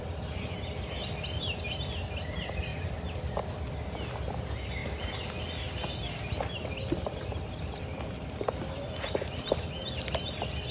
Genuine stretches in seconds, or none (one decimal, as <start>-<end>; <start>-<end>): 0.0-2.7; 3.4-10.7